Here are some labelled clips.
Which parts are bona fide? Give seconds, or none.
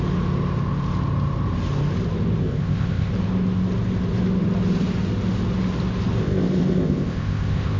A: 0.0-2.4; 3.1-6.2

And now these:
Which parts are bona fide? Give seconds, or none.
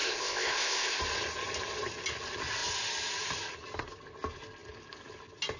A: 1.0-5.6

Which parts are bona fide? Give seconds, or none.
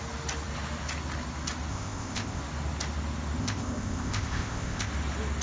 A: 0.0-1.7; 2.4-3.4; 4.9-5.4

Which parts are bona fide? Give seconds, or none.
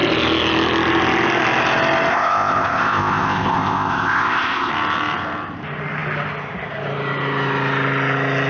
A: 0.0-2.1; 4.7-8.5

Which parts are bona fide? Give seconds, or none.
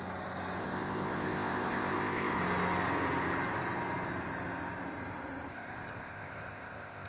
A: 0.0-0.6; 2.4-5.5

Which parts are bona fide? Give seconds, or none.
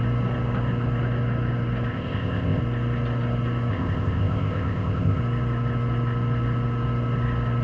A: 0.0-1.9; 2.6-3.7; 5.2-7.6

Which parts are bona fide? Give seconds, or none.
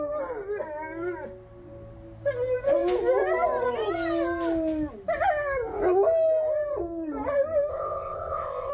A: 0.0-7.7